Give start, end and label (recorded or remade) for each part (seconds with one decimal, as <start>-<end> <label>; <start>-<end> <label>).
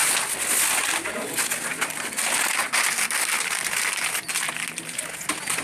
0.0-5.6 recorded